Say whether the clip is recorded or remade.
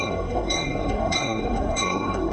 remade